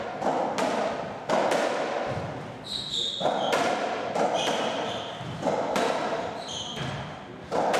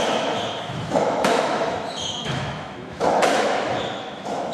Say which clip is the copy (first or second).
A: second